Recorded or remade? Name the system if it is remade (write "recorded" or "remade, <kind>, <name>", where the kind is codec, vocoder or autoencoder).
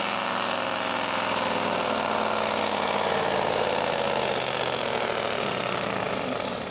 recorded